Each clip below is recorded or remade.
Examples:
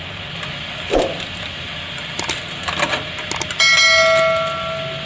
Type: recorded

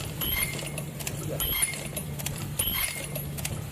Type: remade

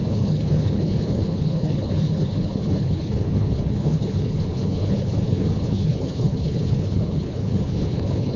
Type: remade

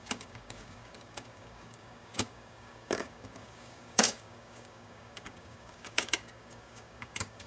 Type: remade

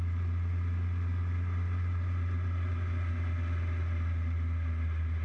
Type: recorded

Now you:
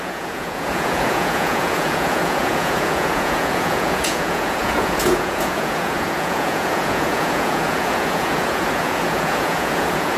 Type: remade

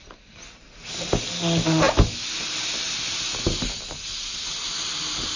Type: recorded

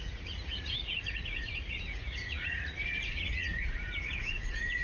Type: remade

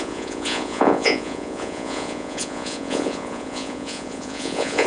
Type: remade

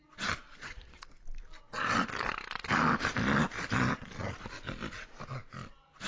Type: recorded